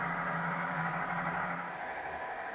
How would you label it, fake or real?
fake